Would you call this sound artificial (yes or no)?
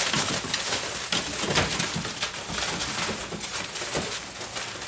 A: no